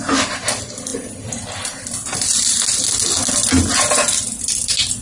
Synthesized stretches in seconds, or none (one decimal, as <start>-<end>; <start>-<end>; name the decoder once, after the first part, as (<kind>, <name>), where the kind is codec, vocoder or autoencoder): none